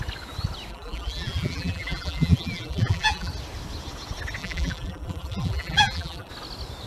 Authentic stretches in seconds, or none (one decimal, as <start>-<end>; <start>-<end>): 0.0-0.7; 3.3-4.4; 6.3-6.9